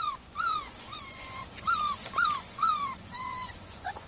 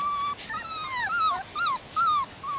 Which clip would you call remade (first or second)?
first